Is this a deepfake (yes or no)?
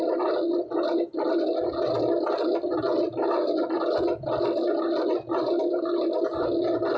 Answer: no